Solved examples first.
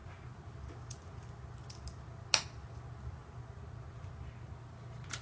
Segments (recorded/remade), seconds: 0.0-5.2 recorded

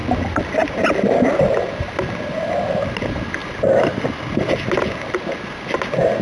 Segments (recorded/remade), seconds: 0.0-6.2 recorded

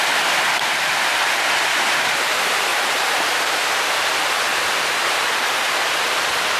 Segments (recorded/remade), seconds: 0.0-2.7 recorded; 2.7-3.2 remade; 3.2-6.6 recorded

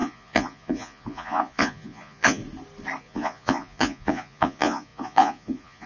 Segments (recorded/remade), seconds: 0.0-2.4 remade; 2.4-3.0 recorded; 3.0-5.9 remade